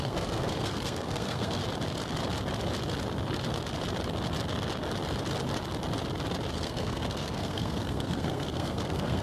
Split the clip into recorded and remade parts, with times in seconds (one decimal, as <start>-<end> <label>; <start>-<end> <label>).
0.0-1.6 remade; 1.6-6.5 recorded; 6.5-9.2 remade